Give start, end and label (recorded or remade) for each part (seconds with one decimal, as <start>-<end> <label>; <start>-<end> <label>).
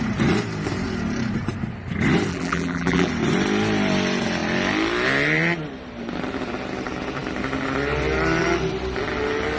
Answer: 0.0-2.3 recorded; 2.3-3.1 remade; 3.1-9.6 recorded